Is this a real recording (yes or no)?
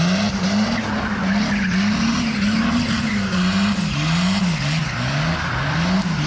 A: yes